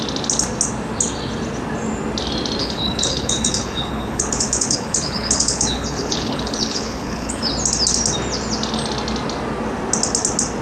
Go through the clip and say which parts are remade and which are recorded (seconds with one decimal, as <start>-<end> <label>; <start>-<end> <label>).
0.0-2.6 recorded; 2.6-7.5 remade; 7.5-10.6 recorded